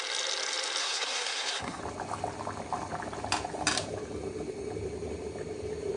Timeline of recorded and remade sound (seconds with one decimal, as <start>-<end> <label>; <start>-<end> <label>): 0.0-0.8 recorded; 0.8-1.8 remade; 1.8-6.0 recorded